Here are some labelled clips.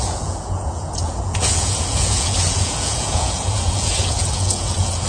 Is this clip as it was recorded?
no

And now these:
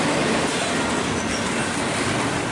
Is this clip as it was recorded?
yes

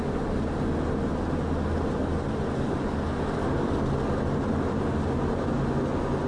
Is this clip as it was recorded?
yes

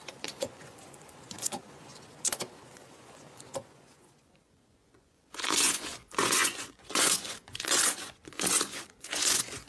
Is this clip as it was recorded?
no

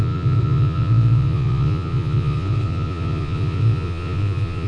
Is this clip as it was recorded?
no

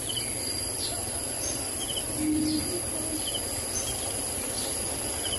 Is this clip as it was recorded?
yes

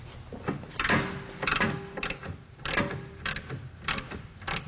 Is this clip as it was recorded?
yes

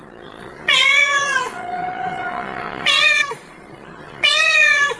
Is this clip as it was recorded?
no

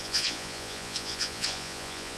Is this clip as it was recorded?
no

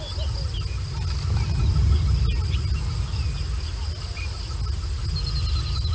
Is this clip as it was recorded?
yes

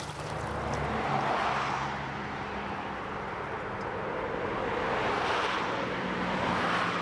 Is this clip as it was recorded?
yes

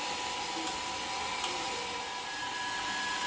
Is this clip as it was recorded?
yes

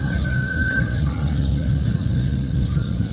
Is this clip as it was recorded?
no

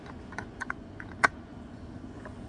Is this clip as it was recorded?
no